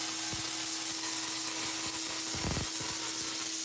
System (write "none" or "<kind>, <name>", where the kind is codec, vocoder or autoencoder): none